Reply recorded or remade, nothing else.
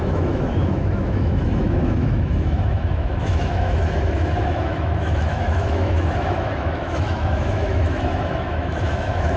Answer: remade